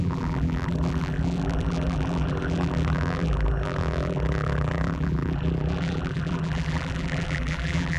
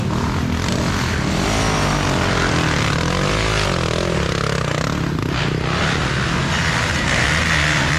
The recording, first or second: second